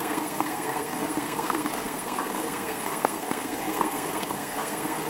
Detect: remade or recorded remade